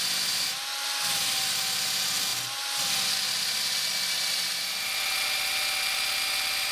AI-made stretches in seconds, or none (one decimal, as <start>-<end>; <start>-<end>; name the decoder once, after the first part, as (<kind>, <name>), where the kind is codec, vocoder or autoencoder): none